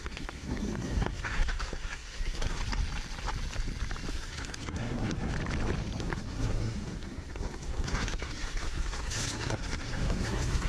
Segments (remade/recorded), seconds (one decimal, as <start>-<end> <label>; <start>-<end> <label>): 0.0-2.6 remade; 2.6-4.1 recorded; 4.1-5.3 remade; 5.3-6.0 recorded; 6.0-10.7 remade